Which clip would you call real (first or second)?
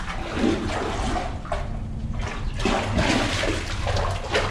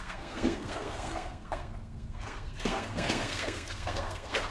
first